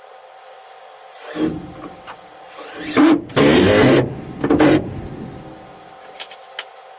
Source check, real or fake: real